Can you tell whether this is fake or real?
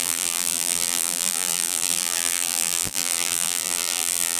fake